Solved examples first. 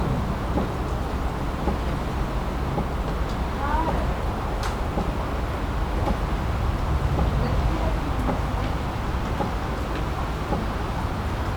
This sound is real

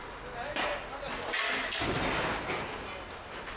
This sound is real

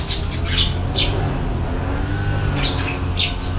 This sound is real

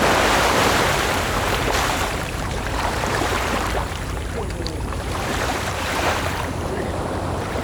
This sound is fake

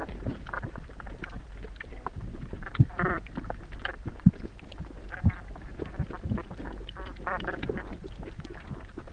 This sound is fake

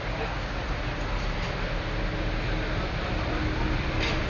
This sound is real